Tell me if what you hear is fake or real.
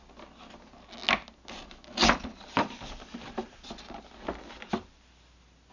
real